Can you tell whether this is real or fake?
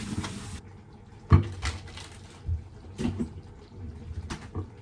real